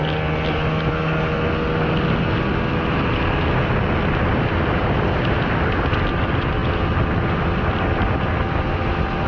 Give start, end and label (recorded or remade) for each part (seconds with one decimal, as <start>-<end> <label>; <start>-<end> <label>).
0.0-9.3 recorded

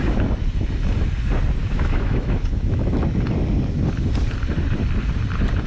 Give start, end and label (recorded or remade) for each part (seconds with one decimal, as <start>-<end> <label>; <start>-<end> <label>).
0.0-1.6 recorded; 1.6-3.0 remade; 3.0-5.7 recorded

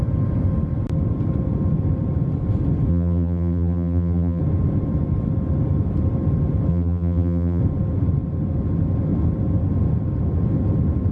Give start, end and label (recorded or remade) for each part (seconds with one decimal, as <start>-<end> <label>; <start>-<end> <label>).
0.0-2.9 recorded; 2.9-4.4 remade; 4.4-6.7 recorded; 6.7-7.6 remade; 7.6-11.1 recorded

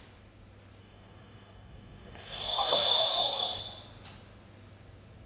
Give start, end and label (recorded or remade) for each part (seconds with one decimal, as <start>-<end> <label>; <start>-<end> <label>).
0.0-0.8 recorded; 0.8-3.6 remade; 3.6-5.3 recorded